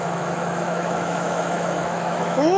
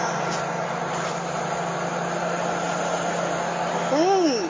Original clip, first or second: second